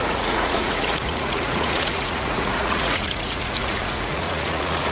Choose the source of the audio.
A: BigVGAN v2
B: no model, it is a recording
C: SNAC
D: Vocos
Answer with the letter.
D